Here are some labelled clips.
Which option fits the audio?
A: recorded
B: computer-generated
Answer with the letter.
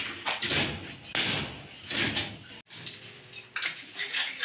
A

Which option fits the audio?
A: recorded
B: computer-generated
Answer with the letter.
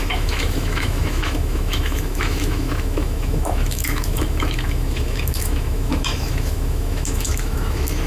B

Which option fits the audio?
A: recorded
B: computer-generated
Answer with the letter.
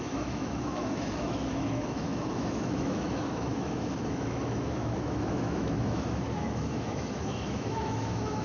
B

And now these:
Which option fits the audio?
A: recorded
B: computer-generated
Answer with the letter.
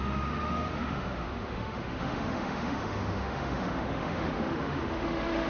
B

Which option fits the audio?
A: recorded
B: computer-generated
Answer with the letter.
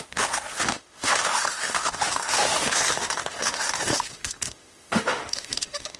B